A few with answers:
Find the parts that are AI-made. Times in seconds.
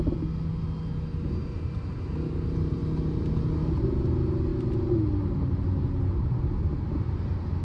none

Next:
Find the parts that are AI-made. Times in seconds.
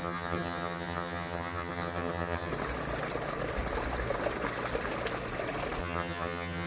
0.0-2.5 (vocoder, HiFi-GAN); 5.8-6.7